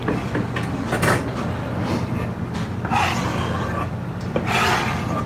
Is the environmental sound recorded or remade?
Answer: recorded